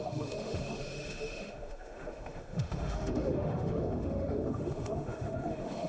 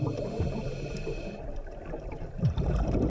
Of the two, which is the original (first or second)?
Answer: second